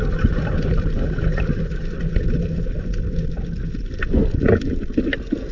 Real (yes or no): yes